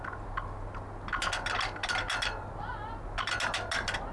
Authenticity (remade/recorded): recorded